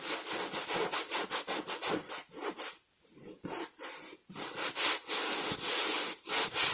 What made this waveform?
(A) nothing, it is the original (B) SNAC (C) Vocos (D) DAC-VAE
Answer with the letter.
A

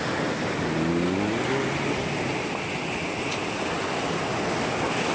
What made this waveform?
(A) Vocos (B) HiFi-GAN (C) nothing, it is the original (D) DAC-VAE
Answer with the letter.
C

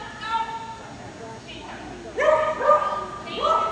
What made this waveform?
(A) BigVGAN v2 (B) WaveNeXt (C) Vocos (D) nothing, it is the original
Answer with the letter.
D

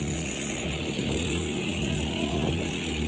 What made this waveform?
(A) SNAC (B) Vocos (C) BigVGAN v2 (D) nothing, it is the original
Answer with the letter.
B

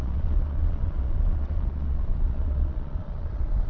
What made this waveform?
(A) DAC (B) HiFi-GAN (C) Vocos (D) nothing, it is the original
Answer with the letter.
C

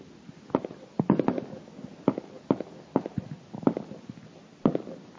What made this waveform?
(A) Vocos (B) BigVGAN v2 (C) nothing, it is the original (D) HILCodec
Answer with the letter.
C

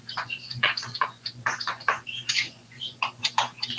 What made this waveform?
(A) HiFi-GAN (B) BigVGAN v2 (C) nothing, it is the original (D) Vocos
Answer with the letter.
D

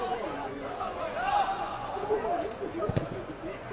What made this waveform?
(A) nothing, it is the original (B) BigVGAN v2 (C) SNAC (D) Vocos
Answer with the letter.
D